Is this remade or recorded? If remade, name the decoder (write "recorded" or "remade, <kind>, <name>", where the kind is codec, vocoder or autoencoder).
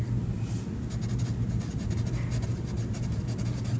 recorded